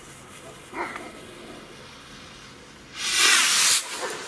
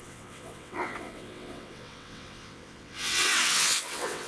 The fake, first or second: second